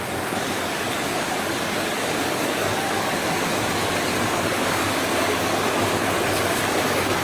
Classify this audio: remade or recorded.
remade